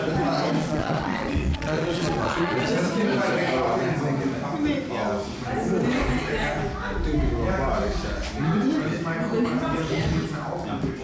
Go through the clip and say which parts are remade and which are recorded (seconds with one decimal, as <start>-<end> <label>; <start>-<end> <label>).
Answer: 0.0-0.6 recorded; 0.6-2.7 remade; 2.7-11.0 recorded